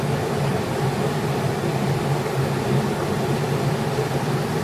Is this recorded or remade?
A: recorded